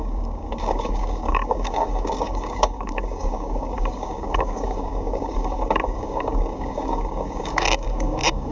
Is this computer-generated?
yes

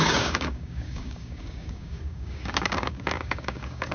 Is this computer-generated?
yes